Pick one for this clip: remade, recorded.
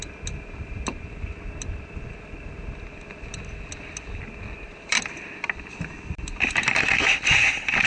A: remade